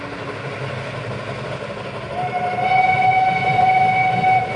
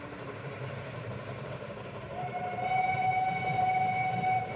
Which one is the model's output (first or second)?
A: second